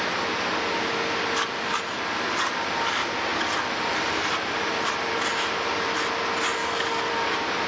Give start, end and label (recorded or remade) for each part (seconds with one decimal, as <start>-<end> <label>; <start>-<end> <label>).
0.0-6.6 recorded; 6.6-7.1 remade; 7.1-7.7 recorded